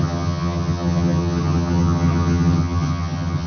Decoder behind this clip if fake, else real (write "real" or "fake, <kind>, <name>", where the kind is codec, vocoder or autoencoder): fake, vocoder, HiFi-GAN